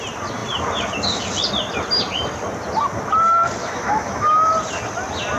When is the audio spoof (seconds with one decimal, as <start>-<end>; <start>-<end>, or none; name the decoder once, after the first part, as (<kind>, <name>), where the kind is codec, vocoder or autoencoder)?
3.6-4.5 (autoencoder, DAC-VAE)